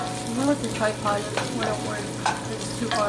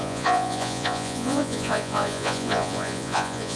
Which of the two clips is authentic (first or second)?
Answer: first